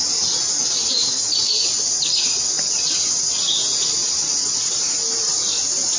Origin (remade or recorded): recorded